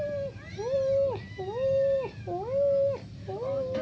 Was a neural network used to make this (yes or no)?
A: no